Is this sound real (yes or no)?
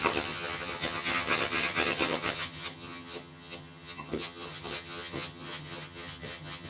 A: no